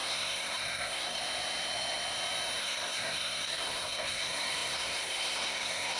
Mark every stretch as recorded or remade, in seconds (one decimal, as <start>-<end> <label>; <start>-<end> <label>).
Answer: 0.0-1.2 remade; 1.2-2.6 recorded; 2.6-6.0 remade